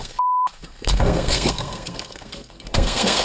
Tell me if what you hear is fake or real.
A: fake